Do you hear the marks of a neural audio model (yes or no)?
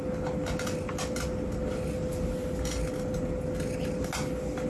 no